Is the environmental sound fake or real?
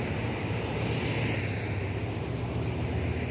real